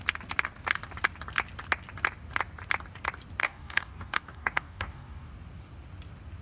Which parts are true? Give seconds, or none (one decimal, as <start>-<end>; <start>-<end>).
0.0-3.4; 5.3-6.4